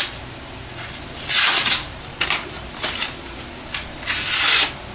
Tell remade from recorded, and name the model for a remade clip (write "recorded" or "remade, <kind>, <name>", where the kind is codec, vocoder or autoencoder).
recorded